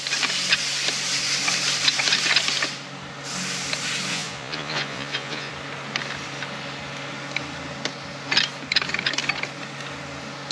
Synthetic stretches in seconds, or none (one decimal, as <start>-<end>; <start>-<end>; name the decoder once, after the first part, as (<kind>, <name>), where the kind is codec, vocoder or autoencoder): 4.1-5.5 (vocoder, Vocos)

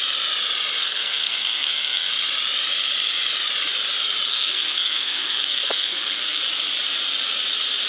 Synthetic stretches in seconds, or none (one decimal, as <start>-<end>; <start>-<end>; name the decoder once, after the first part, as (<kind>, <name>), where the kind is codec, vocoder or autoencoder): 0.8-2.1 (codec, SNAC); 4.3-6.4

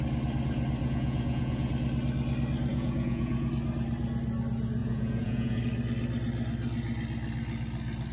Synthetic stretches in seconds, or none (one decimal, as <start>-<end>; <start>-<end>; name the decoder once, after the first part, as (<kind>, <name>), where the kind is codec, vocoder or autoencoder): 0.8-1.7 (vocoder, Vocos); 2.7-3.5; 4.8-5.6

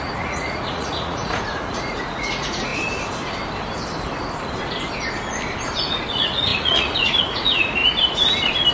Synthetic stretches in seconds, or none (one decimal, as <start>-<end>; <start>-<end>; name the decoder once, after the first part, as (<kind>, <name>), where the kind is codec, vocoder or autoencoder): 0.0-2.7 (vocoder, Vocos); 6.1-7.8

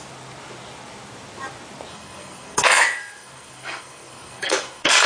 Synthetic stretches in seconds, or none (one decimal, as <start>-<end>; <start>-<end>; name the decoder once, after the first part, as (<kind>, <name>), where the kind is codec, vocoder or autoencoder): 1.9-5.1 (codec, SNAC)